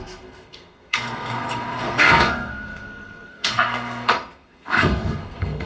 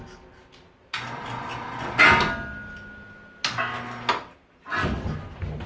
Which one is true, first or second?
second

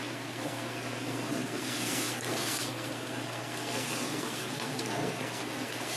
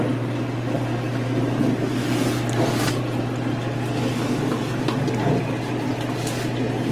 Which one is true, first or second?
second